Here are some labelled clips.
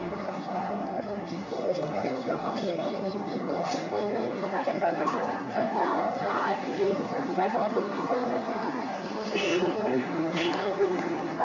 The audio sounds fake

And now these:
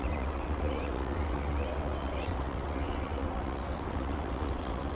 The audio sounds fake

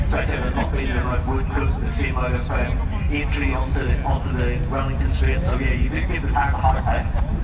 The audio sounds real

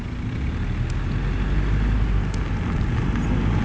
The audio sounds real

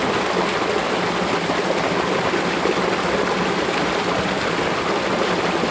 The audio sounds real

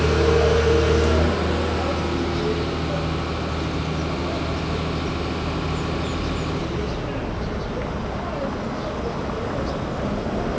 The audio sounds real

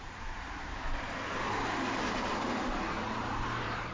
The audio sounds fake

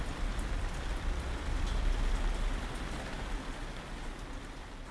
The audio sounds fake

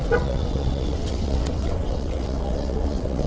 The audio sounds fake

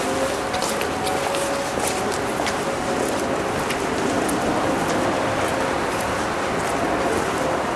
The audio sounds real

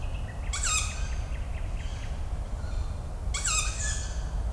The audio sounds real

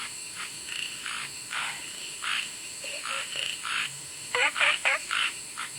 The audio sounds fake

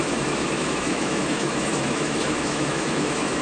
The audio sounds fake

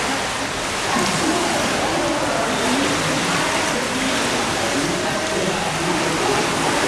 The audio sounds real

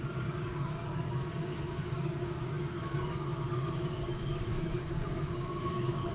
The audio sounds fake